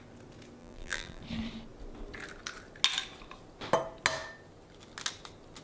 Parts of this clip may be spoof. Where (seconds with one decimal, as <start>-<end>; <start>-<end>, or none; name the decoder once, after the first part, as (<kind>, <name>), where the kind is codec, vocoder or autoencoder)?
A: 0.6-1.2 (vocoder, BigVGAN v2)